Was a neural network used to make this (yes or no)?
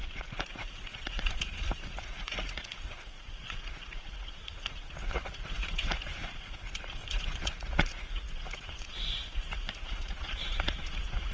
yes